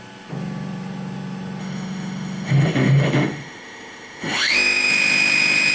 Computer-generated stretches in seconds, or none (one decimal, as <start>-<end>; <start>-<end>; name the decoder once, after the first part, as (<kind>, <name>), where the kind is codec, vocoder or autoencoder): 1.6-4.9 (autoencoder, DAC-VAE)